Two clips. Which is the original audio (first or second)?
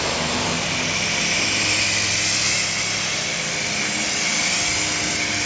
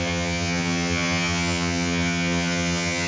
first